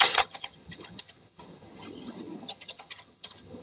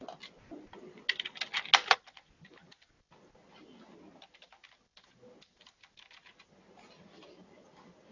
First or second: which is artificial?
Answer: first